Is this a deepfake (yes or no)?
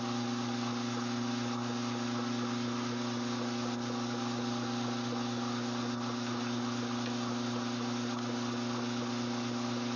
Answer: no